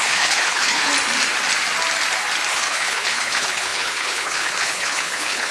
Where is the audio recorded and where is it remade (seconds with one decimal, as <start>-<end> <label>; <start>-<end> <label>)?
0.0-0.9 remade; 0.9-2.5 recorded; 2.5-5.5 remade